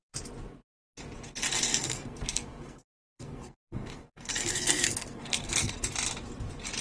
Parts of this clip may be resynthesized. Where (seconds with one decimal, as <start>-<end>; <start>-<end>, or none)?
1.7-5.8